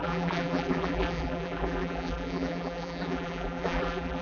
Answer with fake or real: fake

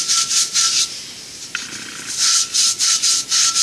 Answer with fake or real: real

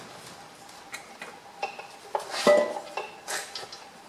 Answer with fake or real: real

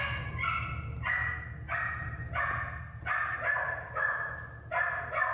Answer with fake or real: real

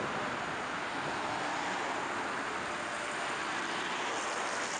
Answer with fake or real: real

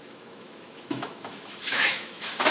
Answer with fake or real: fake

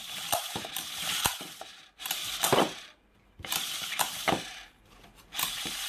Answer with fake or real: fake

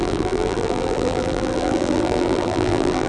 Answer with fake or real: fake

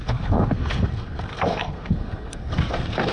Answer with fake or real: fake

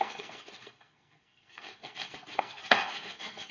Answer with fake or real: fake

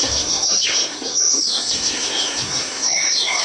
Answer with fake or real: fake